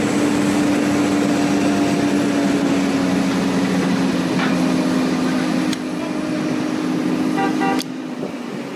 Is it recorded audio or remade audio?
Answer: recorded